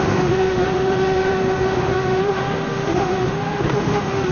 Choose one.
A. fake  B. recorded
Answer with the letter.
A